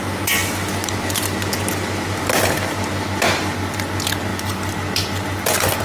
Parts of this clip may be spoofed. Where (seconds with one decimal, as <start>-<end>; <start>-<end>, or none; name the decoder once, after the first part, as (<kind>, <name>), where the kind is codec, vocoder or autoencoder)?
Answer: none